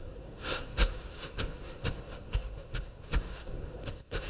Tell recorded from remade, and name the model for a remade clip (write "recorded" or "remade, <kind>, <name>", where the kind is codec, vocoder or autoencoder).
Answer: remade, codec, SNAC